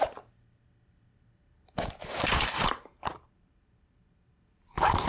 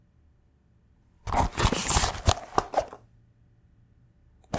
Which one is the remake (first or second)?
first